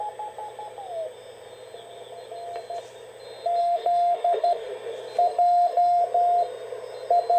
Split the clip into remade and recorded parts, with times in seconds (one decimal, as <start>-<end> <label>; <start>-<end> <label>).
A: 0.0-3.6 recorded; 3.6-4.7 remade; 4.7-5.3 recorded; 5.3-6.0 remade; 6.0-7.4 recorded